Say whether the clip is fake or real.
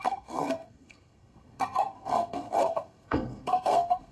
fake